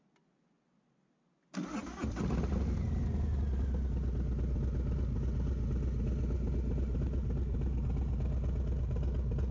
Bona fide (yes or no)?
yes